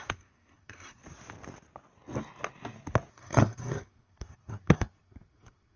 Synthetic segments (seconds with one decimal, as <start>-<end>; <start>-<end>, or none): 0.0-1.0; 3.1-5.8